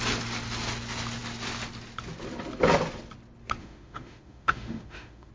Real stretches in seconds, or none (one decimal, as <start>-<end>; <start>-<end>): 0.0-3.6